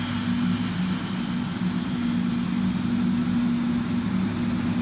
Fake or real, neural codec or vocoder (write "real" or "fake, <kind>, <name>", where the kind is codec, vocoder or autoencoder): real